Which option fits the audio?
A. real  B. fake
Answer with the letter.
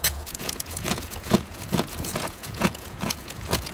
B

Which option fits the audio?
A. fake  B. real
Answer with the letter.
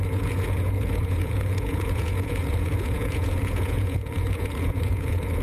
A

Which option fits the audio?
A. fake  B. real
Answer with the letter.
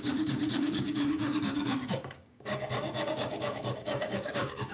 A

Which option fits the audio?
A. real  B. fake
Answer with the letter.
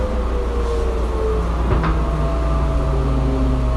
A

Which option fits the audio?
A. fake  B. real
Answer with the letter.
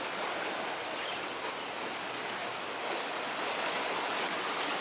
B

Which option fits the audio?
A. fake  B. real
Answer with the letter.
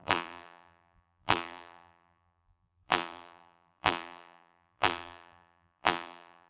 A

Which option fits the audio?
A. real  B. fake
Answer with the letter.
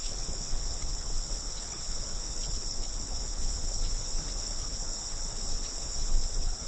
B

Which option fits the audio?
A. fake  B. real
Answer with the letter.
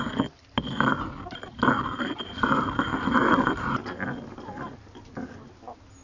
B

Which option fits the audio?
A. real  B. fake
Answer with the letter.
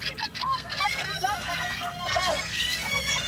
B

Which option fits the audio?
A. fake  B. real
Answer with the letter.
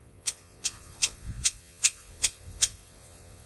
A